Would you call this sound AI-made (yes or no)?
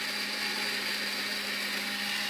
no